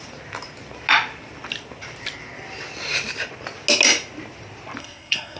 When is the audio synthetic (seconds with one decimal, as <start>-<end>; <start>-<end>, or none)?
4.8-5.4